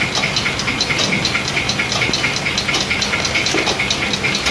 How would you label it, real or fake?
real